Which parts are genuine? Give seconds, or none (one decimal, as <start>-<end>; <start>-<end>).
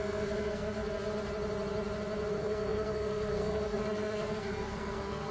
0.8-2.3